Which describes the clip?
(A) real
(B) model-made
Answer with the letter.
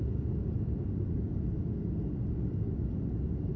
A